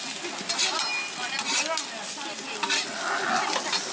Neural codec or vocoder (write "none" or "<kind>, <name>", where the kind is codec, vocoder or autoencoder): none